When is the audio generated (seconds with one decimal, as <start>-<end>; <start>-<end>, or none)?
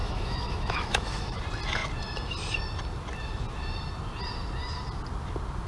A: 0.0-1.4